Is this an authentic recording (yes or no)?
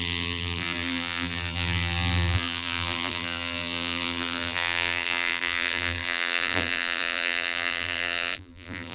no